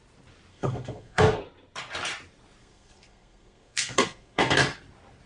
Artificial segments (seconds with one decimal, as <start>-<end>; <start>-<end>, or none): 0.5-1.4; 2.6-4.6